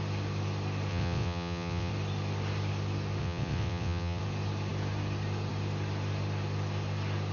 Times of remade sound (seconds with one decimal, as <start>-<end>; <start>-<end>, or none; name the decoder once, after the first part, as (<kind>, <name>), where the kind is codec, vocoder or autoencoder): 0.9-1.9 (vocoder, WaveNeXt); 3.2-4.2